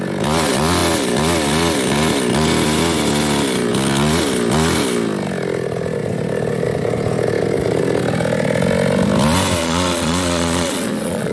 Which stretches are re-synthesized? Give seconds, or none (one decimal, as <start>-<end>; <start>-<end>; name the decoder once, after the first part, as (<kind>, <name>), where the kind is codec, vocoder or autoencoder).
9.6-11.3 (vocoder, Vocos)